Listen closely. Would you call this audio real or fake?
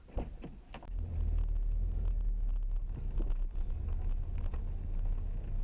real